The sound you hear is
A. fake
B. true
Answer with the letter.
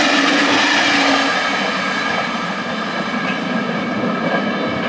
B